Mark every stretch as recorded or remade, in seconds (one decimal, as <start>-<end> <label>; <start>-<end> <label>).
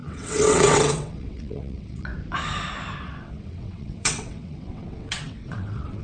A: 0.0-2.1 remade; 2.1-3.0 recorded; 3.0-6.0 remade